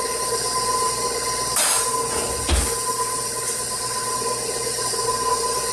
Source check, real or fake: real